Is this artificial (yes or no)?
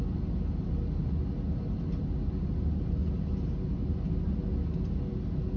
no